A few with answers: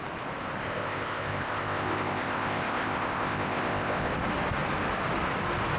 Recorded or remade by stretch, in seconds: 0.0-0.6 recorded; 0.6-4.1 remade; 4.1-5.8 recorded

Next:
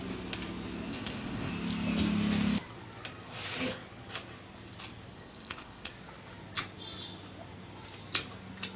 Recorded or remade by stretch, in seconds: 0.0-0.9 recorded; 0.9-1.5 remade; 1.5-5.1 recorded; 5.1-5.9 remade; 5.9-8.8 recorded

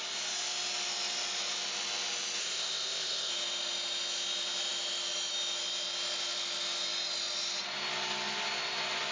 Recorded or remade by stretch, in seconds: 0.0-2.4 recorded; 2.4-3.3 remade; 3.3-9.1 recorded

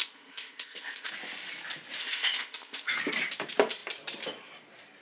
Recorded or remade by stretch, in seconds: 0.0-1.1 remade; 1.1-2.0 recorded; 2.0-2.9 remade; 2.9-5.0 recorded

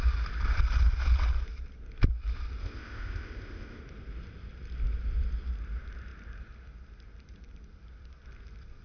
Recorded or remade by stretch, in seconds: 0.0-2.6 recorded; 2.6-3.8 remade; 3.8-8.8 recorded

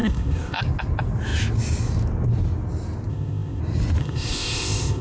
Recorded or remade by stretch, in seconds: 0.0-0.6 remade; 0.6-3.1 recorded; 3.1-3.6 remade; 3.6-4.0 recorded; 4.0-5.0 remade

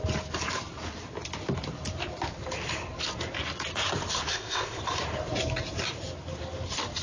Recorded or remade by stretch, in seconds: 0.0-4.3 recorded; 4.3-4.8 remade; 4.8-7.0 recorded